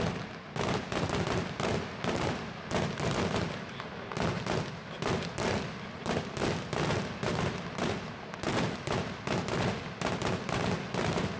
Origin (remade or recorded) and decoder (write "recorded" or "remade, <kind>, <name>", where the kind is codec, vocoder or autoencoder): recorded